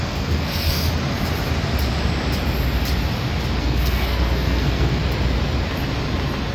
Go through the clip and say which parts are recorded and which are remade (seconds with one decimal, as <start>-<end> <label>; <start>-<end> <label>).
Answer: 0.0-0.9 remade; 0.9-3.6 recorded; 3.6-5.0 remade; 5.0-6.5 recorded